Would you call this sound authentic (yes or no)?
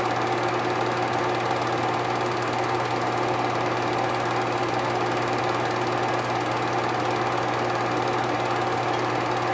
yes